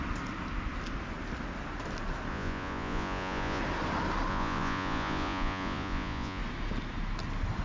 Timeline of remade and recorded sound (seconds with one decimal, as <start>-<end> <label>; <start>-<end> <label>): 0.0-2.3 recorded; 2.3-3.6 remade; 3.6-4.3 recorded; 4.3-6.4 remade; 6.4-7.6 recorded